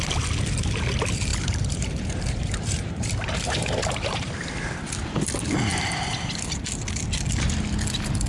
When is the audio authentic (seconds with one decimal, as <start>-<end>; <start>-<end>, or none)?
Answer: 0.0-1.3; 4.3-5.7; 6.5-8.3